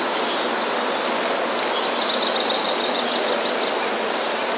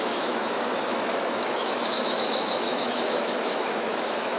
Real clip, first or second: first